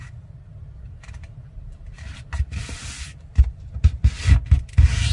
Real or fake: fake